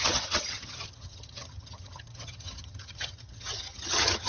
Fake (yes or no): yes